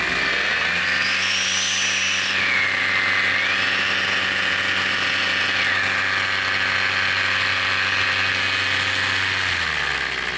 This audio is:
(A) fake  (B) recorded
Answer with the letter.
B